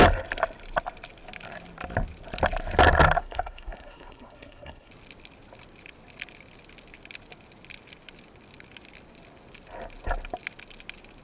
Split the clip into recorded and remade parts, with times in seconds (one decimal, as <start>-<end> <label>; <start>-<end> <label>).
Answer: 0.0-3.2 recorded; 3.2-4.9 remade; 4.9-11.2 recorded